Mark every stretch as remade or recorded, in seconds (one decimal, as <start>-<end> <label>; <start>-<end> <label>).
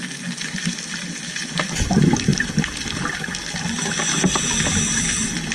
0.0-5.5 recorded